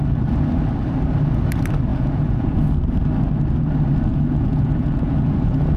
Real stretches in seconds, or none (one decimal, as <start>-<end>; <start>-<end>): 0.0-1.9; 2.7-4.1